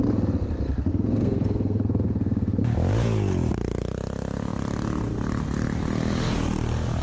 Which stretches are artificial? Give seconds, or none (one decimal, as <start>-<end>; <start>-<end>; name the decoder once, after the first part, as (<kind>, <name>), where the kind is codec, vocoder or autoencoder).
0.9-2.6 (codec, SNAC)